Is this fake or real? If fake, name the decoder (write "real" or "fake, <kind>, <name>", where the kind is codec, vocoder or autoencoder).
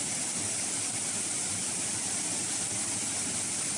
real